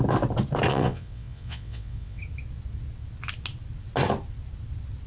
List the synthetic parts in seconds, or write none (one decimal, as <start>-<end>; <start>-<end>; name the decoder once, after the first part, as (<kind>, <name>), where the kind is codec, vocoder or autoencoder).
0.7-2.2 (vocoder, WaveNeXt)